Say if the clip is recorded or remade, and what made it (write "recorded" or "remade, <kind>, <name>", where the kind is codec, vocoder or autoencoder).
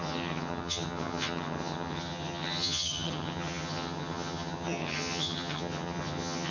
remade, vocoder, HiFi-GAN